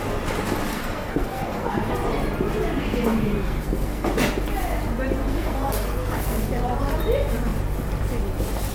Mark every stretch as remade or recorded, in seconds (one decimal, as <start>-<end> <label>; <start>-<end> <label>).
0.0-0.7 recorded; 0.7-1.9 remade; 1.9-2.8 recorded; 2.8-4.1 remade; 4.1-5.2 recorded; 5.2-6.5 remade; 6.5-8.7 recorded